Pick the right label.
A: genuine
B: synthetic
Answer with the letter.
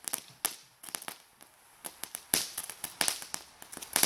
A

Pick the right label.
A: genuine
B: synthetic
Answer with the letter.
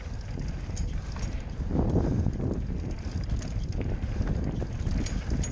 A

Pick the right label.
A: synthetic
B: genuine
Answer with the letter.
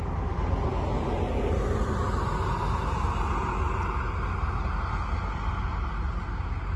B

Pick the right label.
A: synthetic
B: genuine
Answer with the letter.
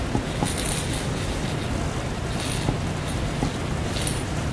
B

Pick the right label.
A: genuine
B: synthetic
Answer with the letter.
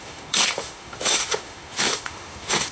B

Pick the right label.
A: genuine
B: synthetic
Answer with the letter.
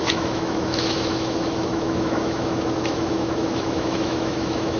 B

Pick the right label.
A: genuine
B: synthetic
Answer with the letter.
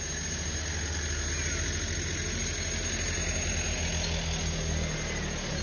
A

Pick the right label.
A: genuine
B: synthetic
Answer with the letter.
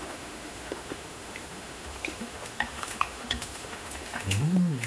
B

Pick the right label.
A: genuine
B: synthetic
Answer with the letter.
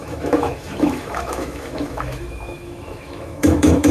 B